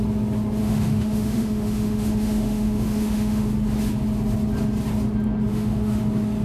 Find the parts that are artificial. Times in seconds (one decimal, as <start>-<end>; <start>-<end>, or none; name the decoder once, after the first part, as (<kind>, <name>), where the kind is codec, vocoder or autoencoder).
0.6-3.5 (autoencoder, DAC-VAE); 5.5-6.0